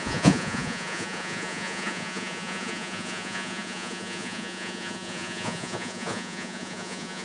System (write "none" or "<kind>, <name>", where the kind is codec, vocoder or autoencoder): vocoder, Vocos